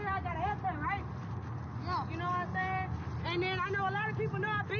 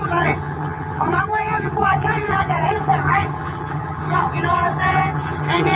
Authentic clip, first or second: first